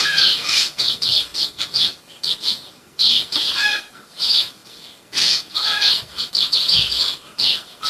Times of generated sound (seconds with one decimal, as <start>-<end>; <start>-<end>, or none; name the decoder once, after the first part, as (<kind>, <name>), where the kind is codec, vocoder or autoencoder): 0.0-7.9 (codec, SNAC)